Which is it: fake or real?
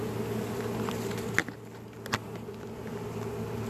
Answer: real